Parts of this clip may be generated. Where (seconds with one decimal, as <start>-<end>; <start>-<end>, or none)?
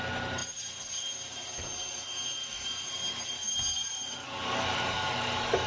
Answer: 4.2-5.7